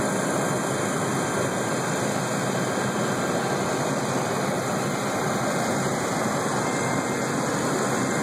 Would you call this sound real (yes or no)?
yes